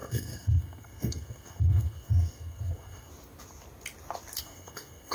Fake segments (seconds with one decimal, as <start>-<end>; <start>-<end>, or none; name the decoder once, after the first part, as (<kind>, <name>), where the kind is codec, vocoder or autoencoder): 0.0-3.1 (codec, SNAC); 4.4-5.1